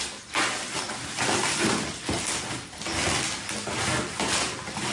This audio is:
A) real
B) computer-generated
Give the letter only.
A